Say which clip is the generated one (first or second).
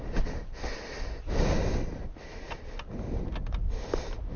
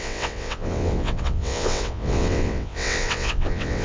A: second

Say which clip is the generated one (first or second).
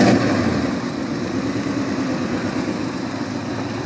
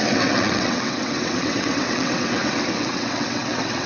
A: second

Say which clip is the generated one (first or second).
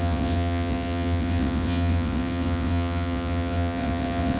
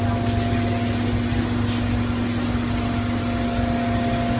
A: first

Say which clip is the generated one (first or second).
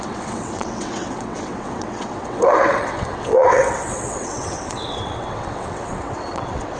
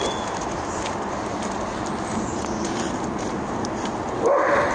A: first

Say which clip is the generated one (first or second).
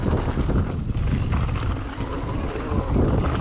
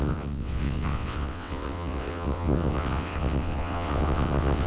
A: second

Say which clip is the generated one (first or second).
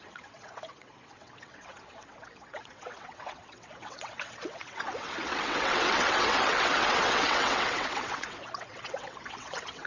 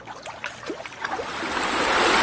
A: first